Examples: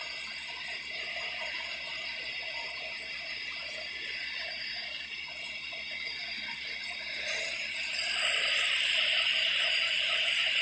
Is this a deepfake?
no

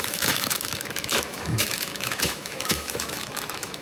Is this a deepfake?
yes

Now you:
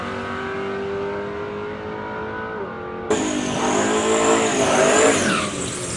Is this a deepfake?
no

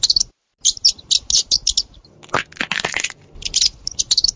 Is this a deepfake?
no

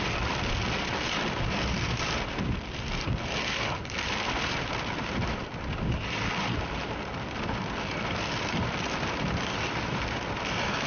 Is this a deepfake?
yes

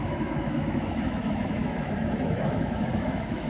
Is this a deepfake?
yes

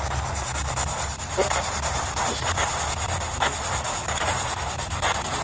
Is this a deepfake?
no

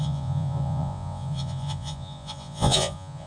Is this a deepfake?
yes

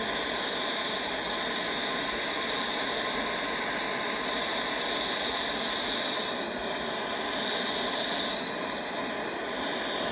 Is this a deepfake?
no